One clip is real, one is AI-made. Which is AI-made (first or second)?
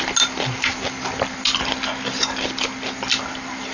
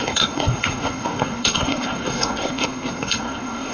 second